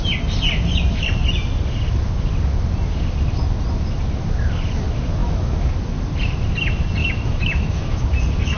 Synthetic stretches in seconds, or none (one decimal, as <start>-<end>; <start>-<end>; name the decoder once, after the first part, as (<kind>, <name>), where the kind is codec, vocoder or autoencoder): 5.2-5.7 (autoencoder, DAC-VAE); 7.0-8.0